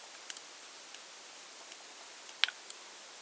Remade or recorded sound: recorded